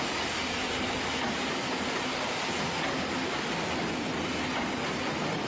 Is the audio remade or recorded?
recorded